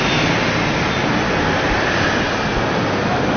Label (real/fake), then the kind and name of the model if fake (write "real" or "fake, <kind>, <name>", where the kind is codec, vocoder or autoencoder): real